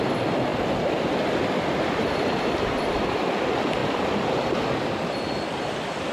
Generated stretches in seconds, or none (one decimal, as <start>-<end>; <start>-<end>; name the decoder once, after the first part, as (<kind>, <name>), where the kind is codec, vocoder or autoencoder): 0.5-2.8 (vocoder, BigVGAN v2)